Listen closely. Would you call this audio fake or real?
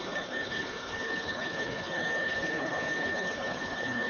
fake